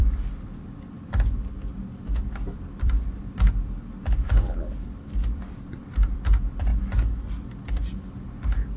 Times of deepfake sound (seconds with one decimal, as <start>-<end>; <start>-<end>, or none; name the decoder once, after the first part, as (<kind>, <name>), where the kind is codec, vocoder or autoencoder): 0.0-6.7 (vocoder, BigVGAN v2)